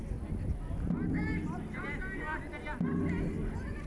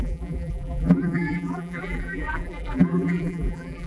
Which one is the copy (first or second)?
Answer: second